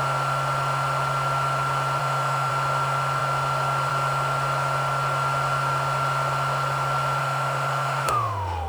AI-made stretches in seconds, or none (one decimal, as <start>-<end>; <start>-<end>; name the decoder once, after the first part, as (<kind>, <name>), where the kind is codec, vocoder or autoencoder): 2.0-2.5 (autoencoder, DAC-VAE); 7.2-8.7